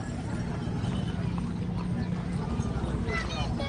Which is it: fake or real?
real